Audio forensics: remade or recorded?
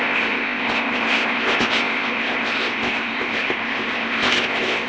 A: remade